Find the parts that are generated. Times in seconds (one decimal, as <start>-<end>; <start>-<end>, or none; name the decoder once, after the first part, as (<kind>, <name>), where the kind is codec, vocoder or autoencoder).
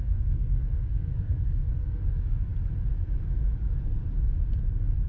0.0-2.5 (codec, SNAC)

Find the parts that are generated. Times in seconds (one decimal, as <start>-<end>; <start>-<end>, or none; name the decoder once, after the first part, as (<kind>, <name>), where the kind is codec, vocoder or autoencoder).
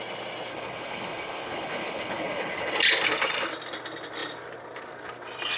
0.5-2.7 (codec, HILCodec)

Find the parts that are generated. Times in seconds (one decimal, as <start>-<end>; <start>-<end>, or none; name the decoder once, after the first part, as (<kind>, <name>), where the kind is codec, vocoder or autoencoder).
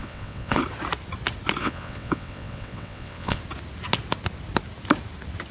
0.0-0.6 (vocoder, WaveNeXt); 1.6-3.4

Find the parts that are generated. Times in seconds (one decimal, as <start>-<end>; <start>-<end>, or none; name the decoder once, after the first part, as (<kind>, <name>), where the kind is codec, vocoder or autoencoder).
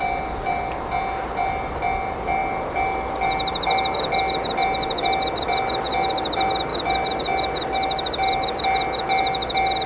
none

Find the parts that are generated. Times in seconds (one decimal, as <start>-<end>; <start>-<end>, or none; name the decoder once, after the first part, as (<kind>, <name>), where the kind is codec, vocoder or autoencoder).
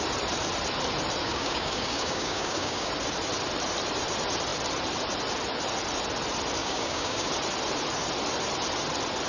1.2-2.9 (codec, DAC); 6.6-7.3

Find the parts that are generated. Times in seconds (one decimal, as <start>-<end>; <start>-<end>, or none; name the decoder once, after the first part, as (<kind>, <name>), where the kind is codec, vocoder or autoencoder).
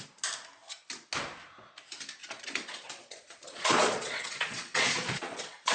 2.2-5.7 (vocoder, Vocos)